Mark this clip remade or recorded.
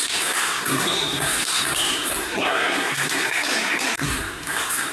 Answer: remade